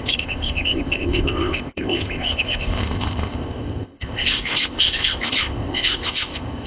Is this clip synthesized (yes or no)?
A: yes